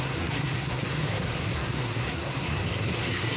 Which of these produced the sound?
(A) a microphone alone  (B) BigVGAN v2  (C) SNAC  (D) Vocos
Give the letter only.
C